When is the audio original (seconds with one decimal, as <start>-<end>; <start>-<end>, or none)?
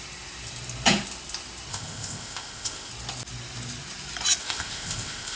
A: 0.0-1.7; 2.9-4.4